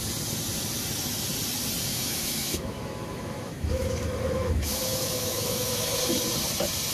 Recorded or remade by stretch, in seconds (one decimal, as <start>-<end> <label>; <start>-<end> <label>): 0.0-1.9 recorded; 1.9-6.0 remade; 6.0-6.9 recorded